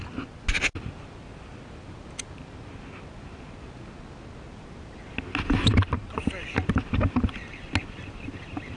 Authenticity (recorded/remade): recorded